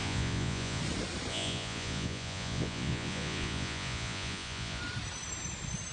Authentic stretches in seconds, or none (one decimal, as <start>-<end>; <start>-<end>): 0.8-1.3; 4.8-5.9

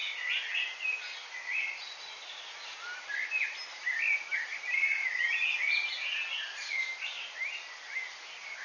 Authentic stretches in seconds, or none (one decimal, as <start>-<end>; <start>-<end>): 0.0-8.6

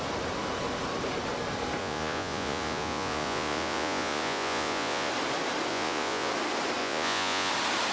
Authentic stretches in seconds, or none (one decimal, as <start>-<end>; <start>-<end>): 0.0-1.8; 5.1-5.7; 6.3-6.8; 7.5-7.9

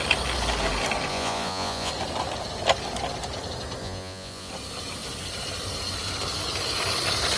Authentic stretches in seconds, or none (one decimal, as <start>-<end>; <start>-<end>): 0.0-1.1; 1.9-3.8; 4.5-7.4

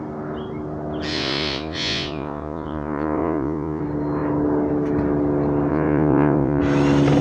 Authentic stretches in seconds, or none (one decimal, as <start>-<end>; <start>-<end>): 0.0-1.1; 3.8-5.7; 6.6-7.2

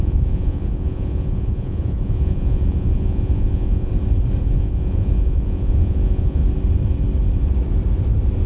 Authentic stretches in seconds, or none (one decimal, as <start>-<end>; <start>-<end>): 3.9-4.4; 6.4-8.5